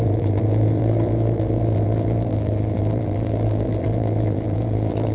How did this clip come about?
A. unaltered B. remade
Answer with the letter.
B